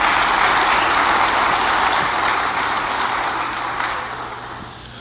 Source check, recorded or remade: recorded